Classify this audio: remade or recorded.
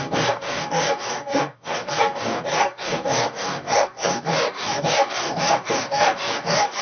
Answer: remade